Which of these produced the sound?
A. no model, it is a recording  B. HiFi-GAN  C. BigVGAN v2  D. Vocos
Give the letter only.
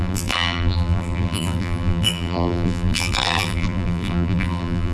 C